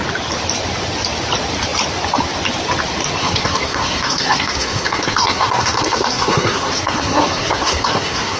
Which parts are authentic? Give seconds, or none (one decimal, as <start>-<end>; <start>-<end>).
0.0-3.2